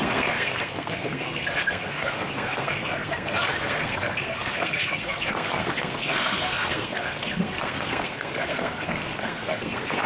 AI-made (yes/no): yes